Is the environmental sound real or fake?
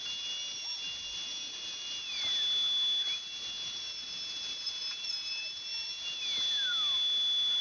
real